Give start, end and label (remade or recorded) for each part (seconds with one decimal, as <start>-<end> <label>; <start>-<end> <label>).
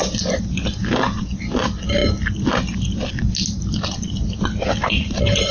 0.0-5.5 recorded